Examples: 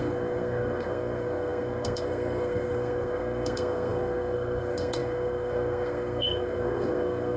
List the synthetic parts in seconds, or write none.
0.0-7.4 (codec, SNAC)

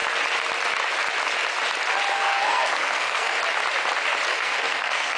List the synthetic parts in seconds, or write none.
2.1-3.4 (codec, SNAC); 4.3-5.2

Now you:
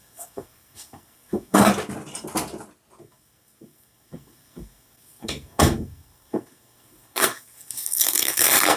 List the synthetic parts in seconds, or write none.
0.0-1.7 (codec, SNAC); 3.0-8.8

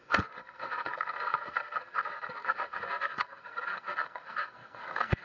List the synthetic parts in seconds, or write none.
0.0-5.2 (codec, SNAC)

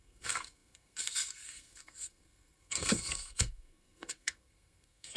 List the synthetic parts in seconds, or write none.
0.0-5.2 (codec, SNAC)

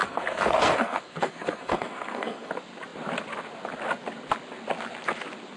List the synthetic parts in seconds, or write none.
0.0-2.5 (codec, SNAC)

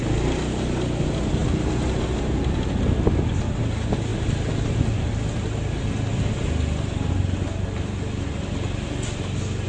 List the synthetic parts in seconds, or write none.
none